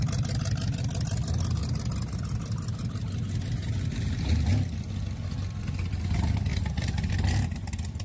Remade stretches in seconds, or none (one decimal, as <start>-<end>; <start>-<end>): 6.5-7.1